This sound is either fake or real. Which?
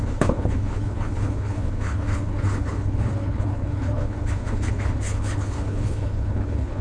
fake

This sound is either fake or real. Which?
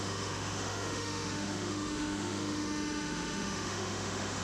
fake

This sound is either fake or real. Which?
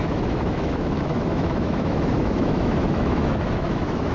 fake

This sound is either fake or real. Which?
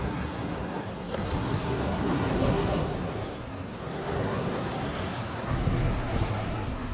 fake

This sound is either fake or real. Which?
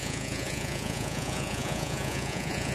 fake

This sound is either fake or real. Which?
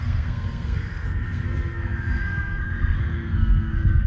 fake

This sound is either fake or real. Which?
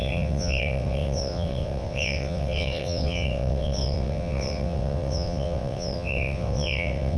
fake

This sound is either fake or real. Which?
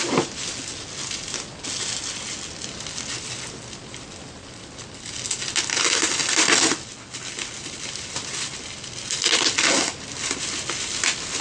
real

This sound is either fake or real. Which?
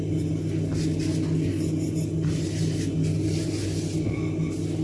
real